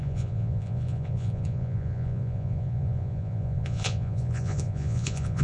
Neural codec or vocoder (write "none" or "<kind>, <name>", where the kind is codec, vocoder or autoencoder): vocoder, Vocos